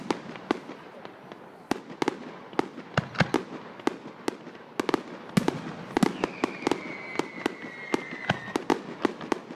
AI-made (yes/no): no